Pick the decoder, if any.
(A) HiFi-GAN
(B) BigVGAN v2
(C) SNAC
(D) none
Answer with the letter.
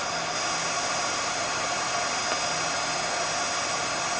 D